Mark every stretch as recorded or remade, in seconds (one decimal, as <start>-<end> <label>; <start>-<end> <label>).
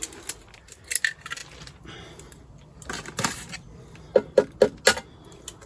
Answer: 0.0-5.7 recorded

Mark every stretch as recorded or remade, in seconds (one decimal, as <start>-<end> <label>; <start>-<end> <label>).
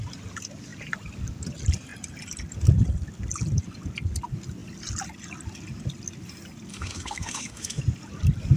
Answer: 0.0-6.7 recorded; 6.7-7.8 remade; 7.8-8.6 recorded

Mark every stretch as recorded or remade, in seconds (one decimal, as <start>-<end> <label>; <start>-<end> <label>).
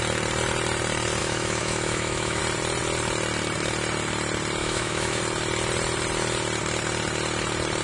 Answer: 0.0-1.2 recorded; 1.2-2.4 remade; 2.4-4.6 recorded; 4.6-5.2 remade; 5.2-7.8 recorded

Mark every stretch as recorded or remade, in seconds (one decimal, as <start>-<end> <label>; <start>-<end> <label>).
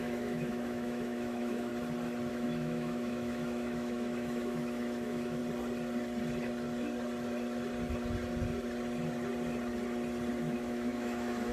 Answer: 0.0-1.7 remade; 1.7-2.3 recorded; 2.3-5.4 remade; 5.4-10.4 recorded; 10.4-11.5 remade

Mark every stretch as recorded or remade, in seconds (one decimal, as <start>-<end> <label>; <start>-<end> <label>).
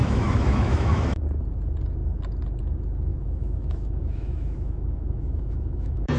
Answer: 0.0-1.2 remade; 1.2-3.1 recorded; 3.1-6.2 remade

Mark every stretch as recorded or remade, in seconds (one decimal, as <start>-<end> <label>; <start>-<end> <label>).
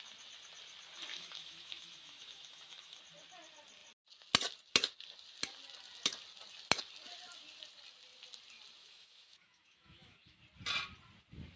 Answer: 0.0-1.1 recorded; 1.1-3.0 remade; 3.0-8.8 recorded; 8.8-10.4 remade; 10.4-11.6 recorded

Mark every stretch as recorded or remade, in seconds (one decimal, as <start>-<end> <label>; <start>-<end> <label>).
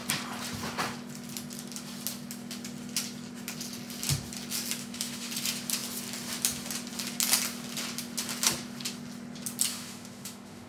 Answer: 0.0-4.8 recorded; 4.8-5.3 remade; 5.3-9.7 recorded; 9.7-10.7 remade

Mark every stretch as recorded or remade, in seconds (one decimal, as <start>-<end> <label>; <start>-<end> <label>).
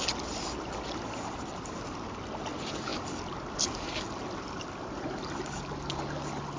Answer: 0.0-6.6 recorded